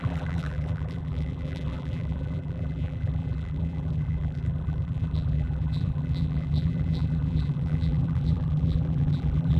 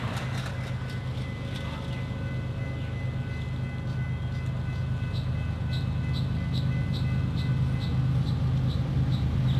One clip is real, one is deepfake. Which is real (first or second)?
second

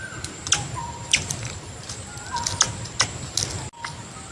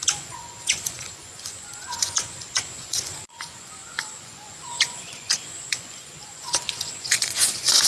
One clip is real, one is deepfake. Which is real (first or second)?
first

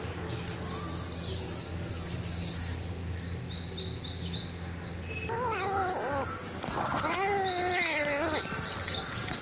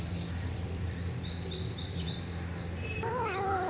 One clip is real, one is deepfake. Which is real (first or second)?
first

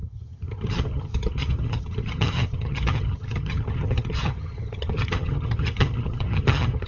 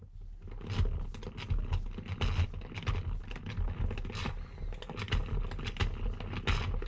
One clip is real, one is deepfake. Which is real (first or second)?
second